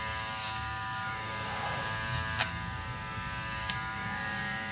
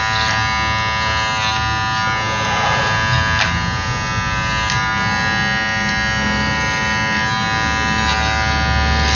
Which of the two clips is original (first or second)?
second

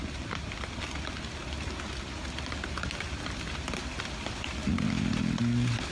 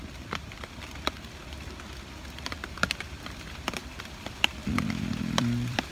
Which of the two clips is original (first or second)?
first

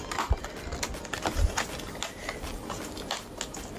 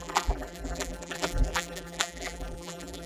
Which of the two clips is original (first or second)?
first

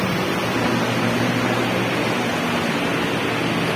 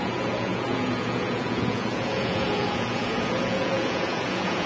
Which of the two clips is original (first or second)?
first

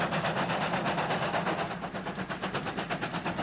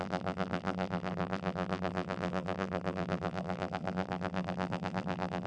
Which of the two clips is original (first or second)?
first